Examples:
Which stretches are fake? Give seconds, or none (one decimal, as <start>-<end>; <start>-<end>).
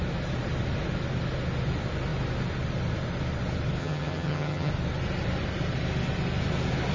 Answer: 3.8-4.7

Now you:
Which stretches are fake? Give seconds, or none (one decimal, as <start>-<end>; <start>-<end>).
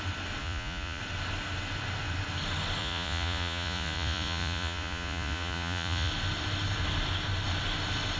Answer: 0.4-1.0; 2.8-6.1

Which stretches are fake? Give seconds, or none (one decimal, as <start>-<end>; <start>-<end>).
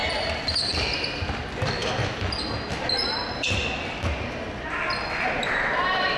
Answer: none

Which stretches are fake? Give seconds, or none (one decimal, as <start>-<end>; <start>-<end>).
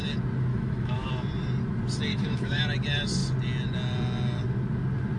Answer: 0.5-1.1; 2.1-2.6